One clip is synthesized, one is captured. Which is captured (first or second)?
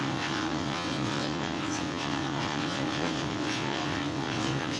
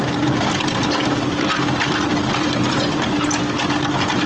second